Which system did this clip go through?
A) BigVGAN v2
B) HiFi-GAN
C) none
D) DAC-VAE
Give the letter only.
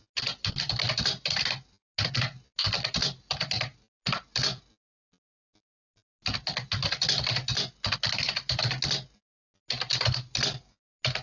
C